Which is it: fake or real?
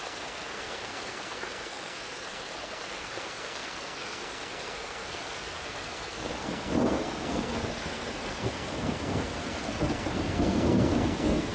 fake